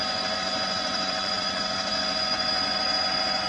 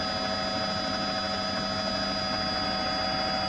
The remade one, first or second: first